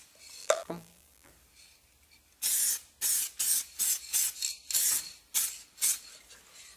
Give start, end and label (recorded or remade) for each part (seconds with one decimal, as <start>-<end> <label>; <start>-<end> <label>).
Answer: 0.0-0.4 recorded; 0.4-1.3 remade; 1.3-6.8 recorded